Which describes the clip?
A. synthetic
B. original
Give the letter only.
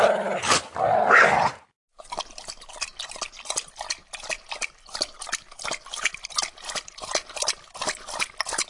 B